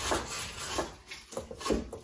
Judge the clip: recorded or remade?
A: recorded